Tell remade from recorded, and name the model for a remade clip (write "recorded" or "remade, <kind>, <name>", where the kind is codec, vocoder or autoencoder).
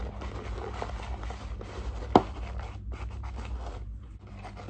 recorded